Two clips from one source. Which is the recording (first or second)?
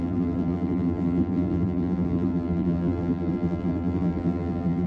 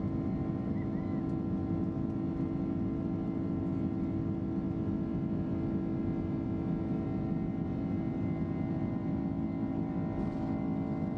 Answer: second